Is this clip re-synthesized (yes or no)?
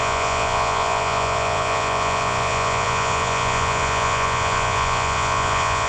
yes